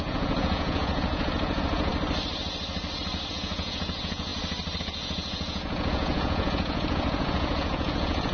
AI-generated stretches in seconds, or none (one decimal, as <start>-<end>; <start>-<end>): 0.0-1.9; 3.3-4.3; 4.8-8.3